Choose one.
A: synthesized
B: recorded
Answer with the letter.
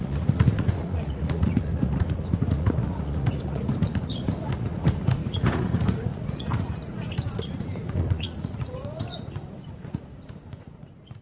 A